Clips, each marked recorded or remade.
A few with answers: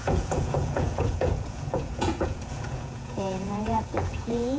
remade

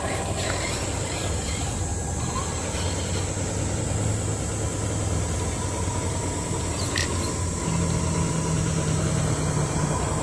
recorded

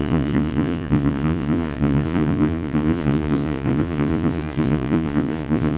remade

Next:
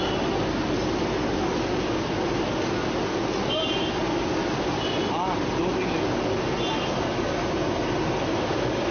recorded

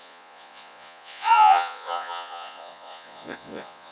remade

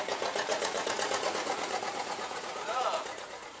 remade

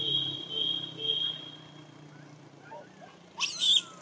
recorded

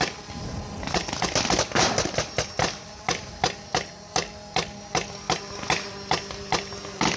recorded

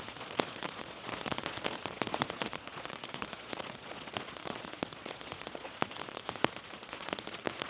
remade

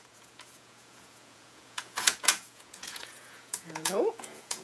remade